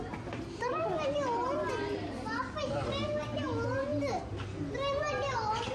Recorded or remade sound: recorded